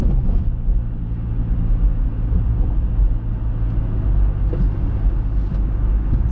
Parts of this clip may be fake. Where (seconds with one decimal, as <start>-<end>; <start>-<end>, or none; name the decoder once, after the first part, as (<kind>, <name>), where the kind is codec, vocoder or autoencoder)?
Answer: none